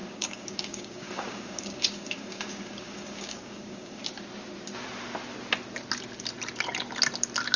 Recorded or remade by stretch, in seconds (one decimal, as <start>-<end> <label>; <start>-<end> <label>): 0.0-4.0 remade; 4.0-7.6 recorded

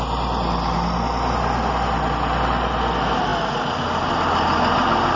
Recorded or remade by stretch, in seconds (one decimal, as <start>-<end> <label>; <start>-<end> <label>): 0.0-5.2 recorded

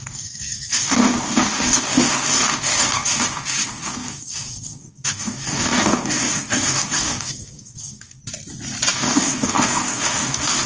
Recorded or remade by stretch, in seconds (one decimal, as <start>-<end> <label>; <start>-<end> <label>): 0.0-8.2 remade; 8.2-8.9 recorded; 8.9-10.7 remade

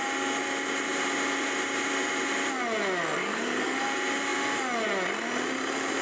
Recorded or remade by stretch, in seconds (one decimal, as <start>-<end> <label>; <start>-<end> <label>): 0.0-3.2 recorded; 3.2-3.8 remade; 3.8-6.0 recorded

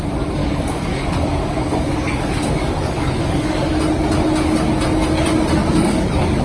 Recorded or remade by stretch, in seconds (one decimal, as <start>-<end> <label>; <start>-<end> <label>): 0.0-0.4 recorded; 0.4-3.8 remade; 3.8-5.6 recorded; 5.6-6.4 remade

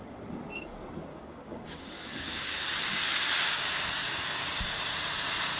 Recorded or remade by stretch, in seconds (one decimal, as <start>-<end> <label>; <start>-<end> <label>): 0.0-1.1 recorded; 1.1-4.5 remade; 4.5-5.6 recorded